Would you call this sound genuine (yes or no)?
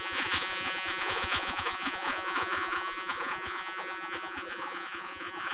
no